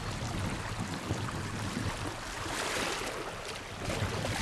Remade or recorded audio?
recorded